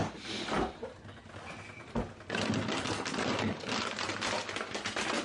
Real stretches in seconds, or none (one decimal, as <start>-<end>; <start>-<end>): 0.0-5.2